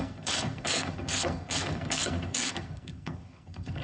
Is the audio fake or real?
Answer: fake